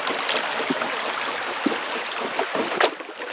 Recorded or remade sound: recorded